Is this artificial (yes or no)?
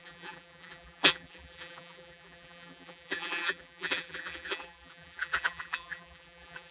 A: yes